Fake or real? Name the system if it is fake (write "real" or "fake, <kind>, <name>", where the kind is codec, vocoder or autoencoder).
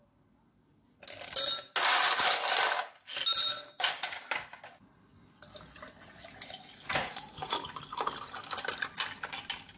real